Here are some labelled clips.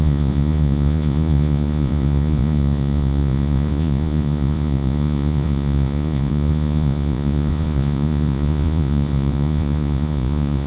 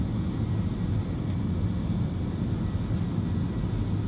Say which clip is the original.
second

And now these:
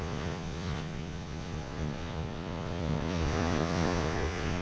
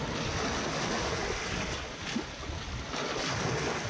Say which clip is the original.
second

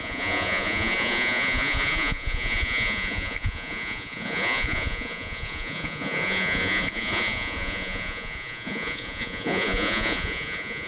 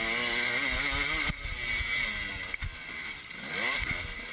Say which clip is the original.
second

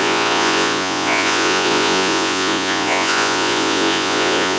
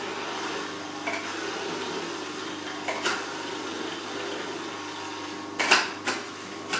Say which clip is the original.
second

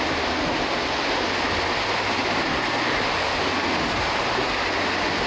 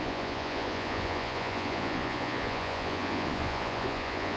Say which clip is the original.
first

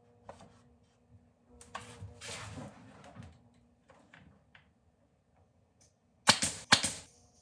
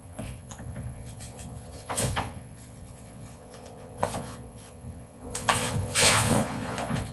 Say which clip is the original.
first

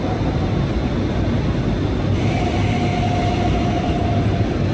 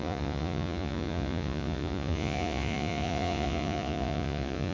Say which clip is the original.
first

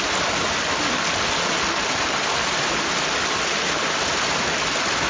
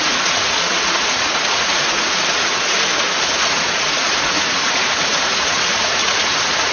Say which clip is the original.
first